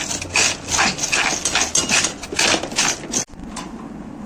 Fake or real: real